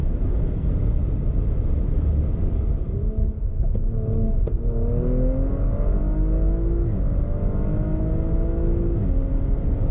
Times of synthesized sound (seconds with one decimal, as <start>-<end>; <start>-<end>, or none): 0.0-1.0